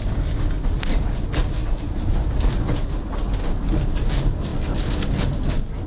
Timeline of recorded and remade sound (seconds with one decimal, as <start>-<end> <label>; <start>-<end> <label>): 0.0-1.6 recorded; 1.6-2.5 remade; 2.5-3.4 recorded; 3.4-4.0 remade; 4.0-5.9 recorded